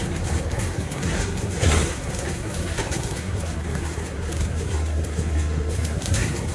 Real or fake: fake